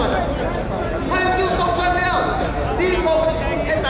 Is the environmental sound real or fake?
real